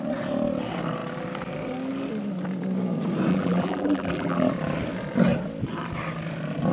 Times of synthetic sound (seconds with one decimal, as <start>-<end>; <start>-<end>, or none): 3.3-4.5